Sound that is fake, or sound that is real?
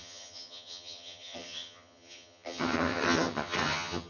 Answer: fake